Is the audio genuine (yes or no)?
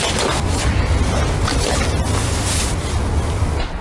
yes